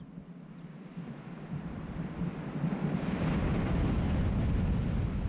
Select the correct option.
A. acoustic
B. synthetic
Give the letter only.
A